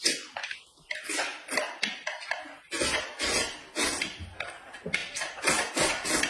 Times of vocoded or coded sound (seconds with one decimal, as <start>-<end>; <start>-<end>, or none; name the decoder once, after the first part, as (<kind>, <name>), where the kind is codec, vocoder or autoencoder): none